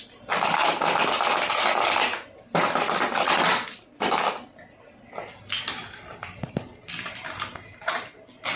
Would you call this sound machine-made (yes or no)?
no